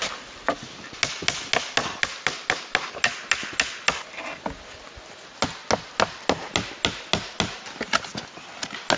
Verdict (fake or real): real